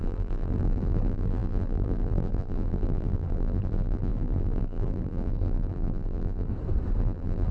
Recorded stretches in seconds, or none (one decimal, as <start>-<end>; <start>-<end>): 6.5-7.0